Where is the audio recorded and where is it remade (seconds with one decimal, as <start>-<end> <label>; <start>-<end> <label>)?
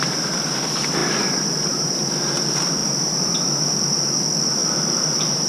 0.0-2.8 recorded; 2.8-3.3 remade; 3.3-4.6 recorded; 4.6-5.5 remade